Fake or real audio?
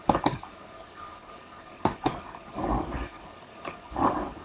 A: fake